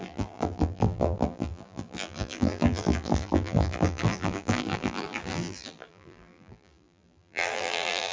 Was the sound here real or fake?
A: fake